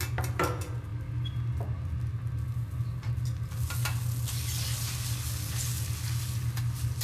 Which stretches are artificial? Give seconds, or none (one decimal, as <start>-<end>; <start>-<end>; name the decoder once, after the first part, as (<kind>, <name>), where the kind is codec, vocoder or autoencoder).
none